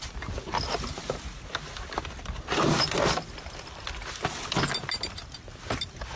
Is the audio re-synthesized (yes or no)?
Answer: no